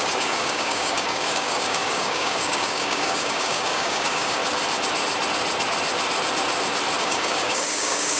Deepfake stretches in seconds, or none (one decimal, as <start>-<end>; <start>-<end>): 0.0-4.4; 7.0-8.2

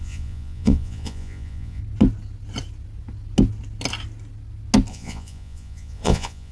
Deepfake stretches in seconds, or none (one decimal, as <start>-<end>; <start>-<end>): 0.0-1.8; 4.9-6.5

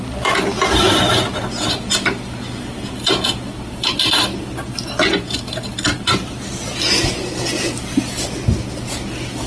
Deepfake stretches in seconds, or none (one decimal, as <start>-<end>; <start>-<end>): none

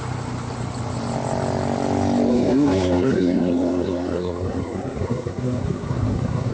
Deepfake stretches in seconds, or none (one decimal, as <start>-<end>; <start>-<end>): 2.3-6.5

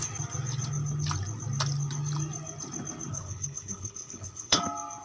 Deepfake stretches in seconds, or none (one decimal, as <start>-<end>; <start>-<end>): 3.1-4.6